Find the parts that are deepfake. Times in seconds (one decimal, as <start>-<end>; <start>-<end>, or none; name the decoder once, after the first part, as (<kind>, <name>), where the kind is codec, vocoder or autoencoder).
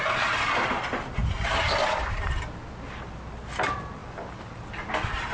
none